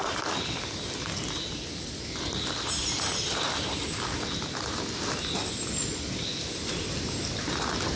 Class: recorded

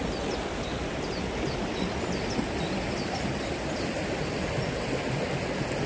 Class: recorded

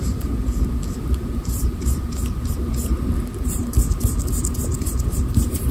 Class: remade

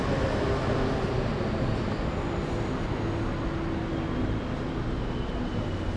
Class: recorded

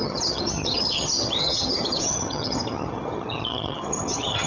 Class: remade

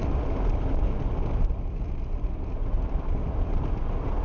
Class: recorded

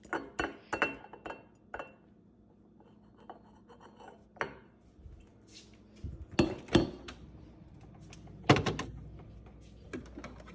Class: recorded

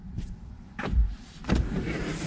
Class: remade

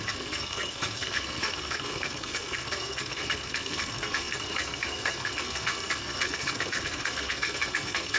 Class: remade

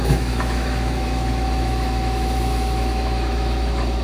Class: remade